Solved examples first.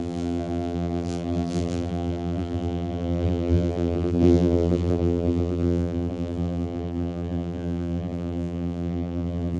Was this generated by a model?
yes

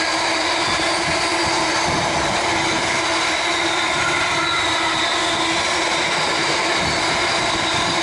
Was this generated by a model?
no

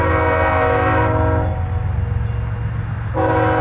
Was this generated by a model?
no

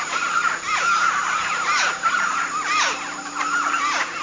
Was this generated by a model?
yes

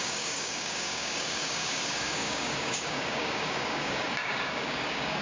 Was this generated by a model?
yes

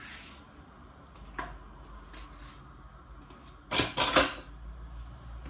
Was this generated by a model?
no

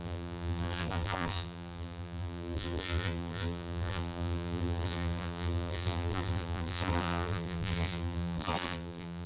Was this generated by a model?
yes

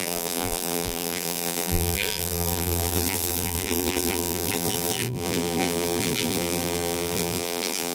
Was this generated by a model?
yes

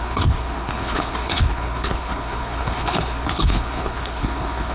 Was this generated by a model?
yes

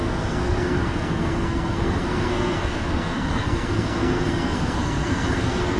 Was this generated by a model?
yes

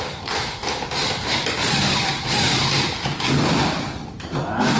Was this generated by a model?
no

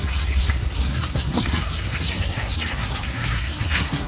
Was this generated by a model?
yes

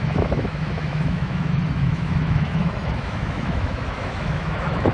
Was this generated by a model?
yes